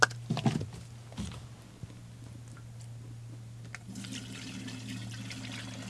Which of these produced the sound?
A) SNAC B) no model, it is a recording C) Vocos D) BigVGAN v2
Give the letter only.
B